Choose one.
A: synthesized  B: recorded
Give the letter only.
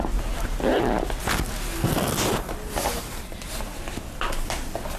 B